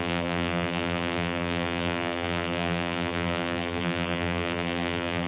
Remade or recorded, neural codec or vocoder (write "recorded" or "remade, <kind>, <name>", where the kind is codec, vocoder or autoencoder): remade, vocoder, BigVGAN v2